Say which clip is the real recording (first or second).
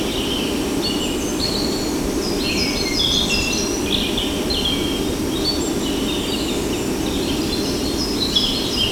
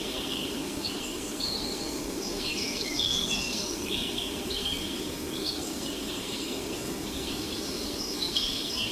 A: first